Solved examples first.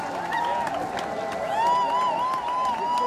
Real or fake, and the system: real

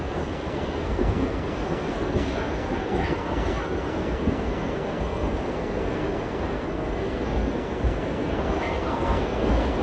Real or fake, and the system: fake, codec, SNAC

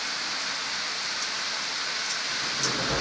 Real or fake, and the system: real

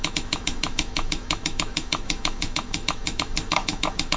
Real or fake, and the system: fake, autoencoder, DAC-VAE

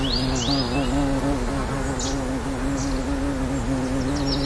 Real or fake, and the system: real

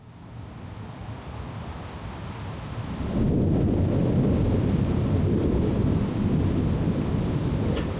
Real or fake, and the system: real